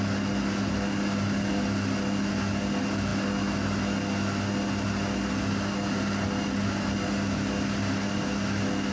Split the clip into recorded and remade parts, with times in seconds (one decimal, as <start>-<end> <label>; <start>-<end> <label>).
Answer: 0.0-8.9 recorded